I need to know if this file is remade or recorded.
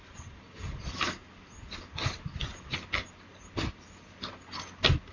recorded